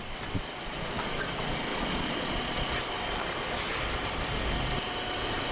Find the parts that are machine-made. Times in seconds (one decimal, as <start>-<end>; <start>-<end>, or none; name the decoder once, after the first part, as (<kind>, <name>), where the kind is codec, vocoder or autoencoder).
1.7-2.8 (vocoder, Vocos)